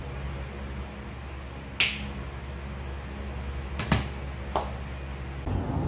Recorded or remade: recorded